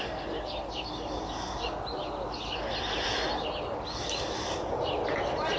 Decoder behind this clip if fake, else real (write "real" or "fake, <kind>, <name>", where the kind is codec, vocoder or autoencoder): real